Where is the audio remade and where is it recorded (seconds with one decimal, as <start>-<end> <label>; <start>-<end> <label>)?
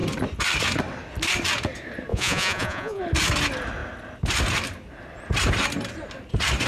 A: 0.0-2.1 recorded; 2.1-3.0 remade; 3.0-6.7 recorded